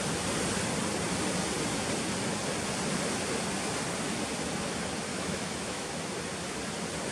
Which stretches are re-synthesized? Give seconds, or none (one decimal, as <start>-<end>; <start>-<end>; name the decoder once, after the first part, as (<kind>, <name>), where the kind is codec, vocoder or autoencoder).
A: 5.1-5.9 (autoencoder, DAC-VAE)